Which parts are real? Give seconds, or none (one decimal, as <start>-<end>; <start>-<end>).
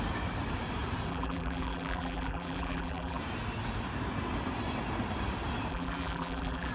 0.0-1.1; 3.2-5.7